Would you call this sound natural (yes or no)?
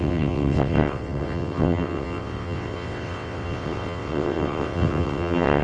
no